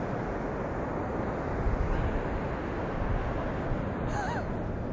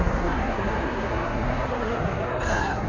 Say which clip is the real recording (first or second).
first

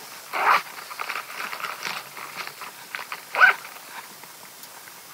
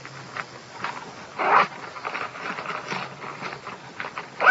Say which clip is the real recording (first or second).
second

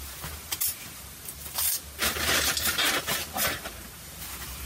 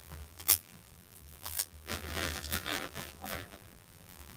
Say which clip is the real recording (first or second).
first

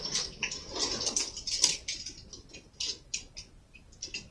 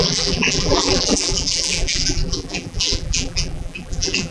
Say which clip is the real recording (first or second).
first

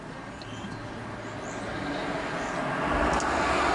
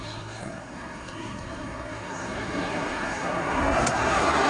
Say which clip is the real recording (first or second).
first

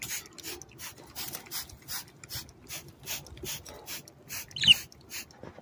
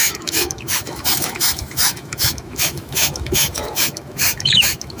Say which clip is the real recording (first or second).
first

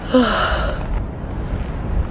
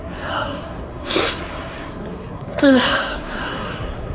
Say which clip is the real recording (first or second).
first